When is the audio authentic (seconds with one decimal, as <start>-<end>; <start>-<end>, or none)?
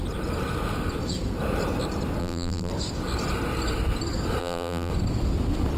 0.0-2.2; 2.7-4.4; 4.9-5.8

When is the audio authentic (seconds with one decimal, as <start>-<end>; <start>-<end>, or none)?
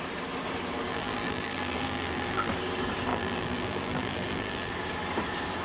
0.0-0.9; 2.5-3.1; 4.7-5.6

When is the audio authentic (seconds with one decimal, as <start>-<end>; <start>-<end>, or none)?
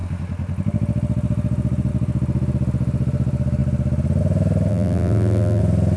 0.0-4.7; 5.6-6.0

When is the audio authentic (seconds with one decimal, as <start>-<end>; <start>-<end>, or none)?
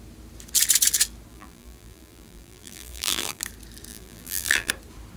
0.0-1.3; 3.4-3.9; 4.7-5.2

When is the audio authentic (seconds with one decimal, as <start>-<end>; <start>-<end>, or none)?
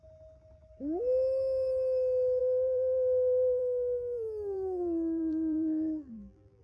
0.0-2.4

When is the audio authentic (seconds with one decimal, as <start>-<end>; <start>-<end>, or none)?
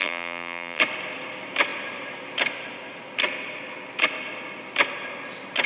0.8-5.7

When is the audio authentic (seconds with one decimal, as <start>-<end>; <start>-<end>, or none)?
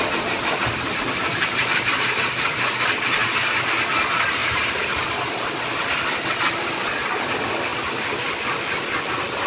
0.0-4.4; 5.5-9.5